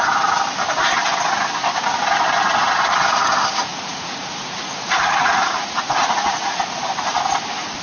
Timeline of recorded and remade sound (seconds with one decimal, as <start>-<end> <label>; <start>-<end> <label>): 0.0-3.7 recorded; 3.7-6.6 remade; 6.6-7.8 recorded